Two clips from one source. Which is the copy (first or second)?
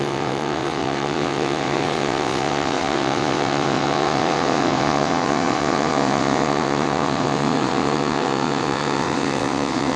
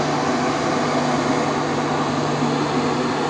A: first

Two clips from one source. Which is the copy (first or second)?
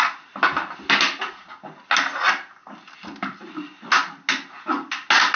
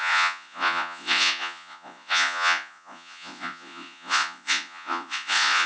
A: second